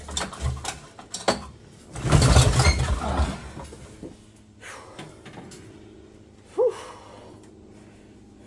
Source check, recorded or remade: recorded